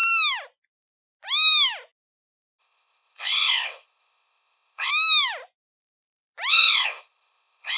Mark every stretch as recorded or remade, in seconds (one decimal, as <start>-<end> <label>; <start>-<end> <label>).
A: 0.0-2.6 recorded; 2.6-4.9 remade; 4.9-6.5 recorded; 6.5-7.8 remade